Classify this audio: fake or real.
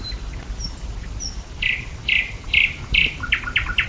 fake